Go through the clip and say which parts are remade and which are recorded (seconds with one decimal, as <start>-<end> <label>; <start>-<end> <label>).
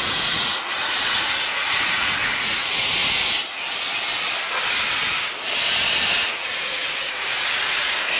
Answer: 0.0-3.0 remade; 3.0-6.2 recorded; 6.2-8.2 remade